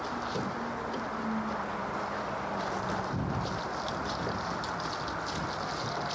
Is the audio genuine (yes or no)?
yes